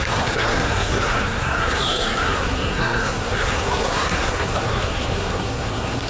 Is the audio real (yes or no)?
no